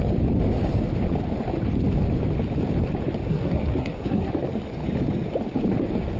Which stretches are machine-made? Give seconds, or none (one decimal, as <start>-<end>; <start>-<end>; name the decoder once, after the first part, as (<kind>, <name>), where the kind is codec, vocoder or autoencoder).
3.3-4.3 (codec, SNAC)